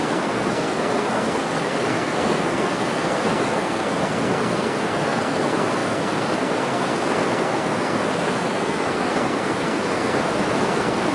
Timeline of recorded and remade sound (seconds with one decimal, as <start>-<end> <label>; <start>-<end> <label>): 0.0-11.1 remade